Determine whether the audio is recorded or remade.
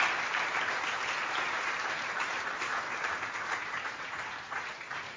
remade